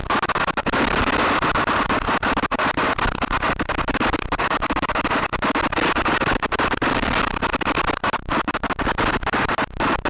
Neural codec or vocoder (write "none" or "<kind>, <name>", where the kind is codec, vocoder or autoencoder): none